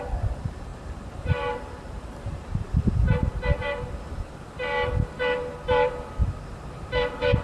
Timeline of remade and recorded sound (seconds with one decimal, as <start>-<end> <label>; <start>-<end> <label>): 0.0-3.3 remade; 3.3-6.8 recorded; 6.8-7.4 remade